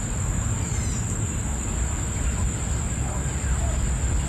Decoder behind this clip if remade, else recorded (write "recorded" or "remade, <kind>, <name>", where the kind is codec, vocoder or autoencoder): recorded